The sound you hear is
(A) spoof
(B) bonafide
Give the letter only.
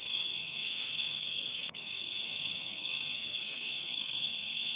A